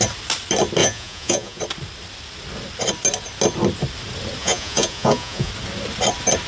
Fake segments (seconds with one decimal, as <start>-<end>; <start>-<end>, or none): 0.8-1.6; 4.4-5.5